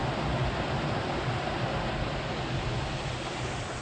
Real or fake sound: real